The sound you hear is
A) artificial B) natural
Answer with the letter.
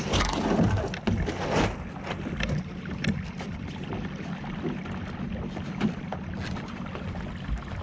B